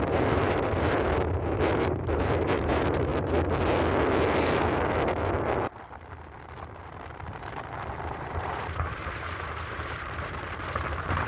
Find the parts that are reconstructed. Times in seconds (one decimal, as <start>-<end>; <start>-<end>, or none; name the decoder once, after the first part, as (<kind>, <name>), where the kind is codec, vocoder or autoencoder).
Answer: 0.0-3.1 (vocoder, BigVGAN v2); 8.1-11.3